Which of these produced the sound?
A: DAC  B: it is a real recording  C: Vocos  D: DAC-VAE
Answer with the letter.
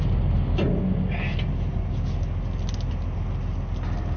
B